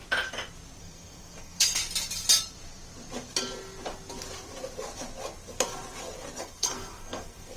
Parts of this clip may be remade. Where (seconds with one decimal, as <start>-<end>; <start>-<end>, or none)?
0.8-1.8; 6.4-7.6